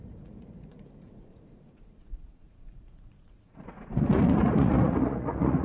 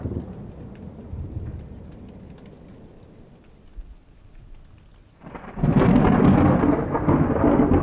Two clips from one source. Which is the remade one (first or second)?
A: first